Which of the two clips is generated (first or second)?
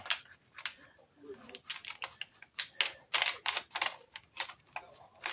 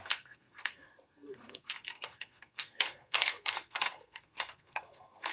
second